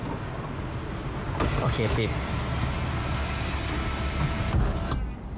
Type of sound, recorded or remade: recorded